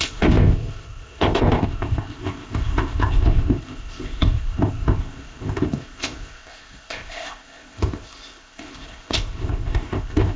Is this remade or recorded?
remade